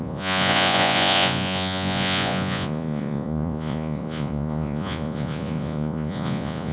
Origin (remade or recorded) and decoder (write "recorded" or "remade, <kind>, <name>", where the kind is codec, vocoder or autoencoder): remade, vocoder, Vocos